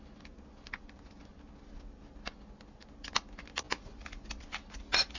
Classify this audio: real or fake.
real